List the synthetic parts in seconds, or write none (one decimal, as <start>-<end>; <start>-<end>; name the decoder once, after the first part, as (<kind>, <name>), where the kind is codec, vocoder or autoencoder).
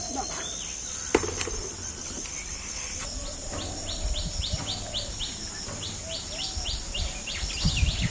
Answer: 3.4-4.6 (vocoder, BigVGAN v2)